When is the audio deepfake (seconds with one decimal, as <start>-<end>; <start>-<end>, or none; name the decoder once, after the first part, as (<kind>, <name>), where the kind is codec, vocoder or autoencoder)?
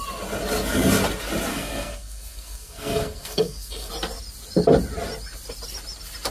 1.5-3.9 (codec, SNAC)